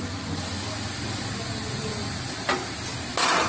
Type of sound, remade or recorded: recorded